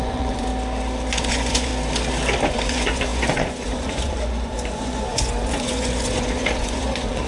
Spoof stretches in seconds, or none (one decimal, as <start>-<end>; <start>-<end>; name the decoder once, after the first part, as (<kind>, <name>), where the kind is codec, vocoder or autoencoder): 0.0-0.5 (vocoder, Vocos); 1.1-1.7; 2.5-7.3